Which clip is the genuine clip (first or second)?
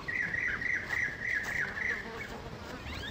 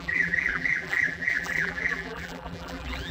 first